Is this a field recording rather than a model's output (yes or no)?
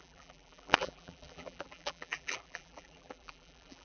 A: no